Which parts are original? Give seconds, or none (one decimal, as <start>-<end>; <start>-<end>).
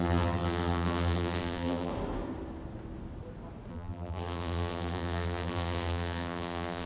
1.9-3.7